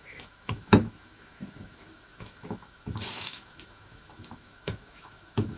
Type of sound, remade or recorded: remade